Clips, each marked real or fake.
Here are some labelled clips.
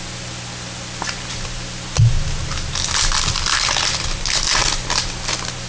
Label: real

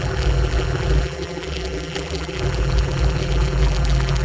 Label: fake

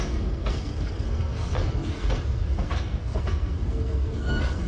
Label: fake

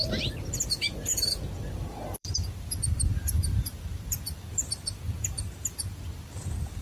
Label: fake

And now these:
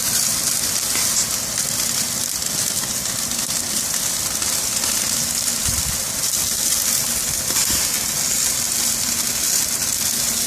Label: real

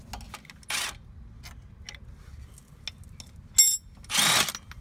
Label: real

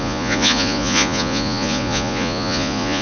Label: fake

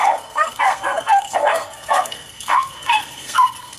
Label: fake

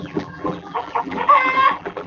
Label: fake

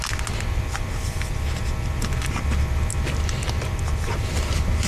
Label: real